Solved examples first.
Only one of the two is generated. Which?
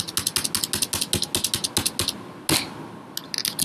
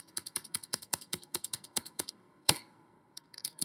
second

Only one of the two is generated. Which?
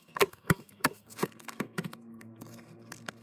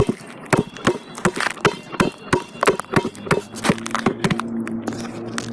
first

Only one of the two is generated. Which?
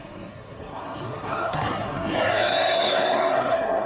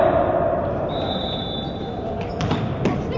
first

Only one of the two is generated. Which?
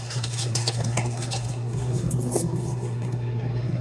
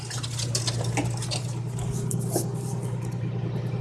first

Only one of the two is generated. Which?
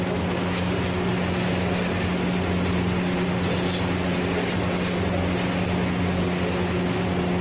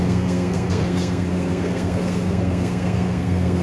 second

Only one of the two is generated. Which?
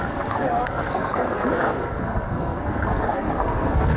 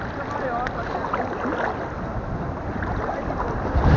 first